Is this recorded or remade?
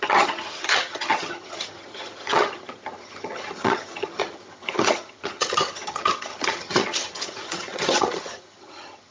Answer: remade